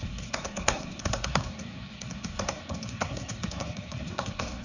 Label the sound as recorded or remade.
remade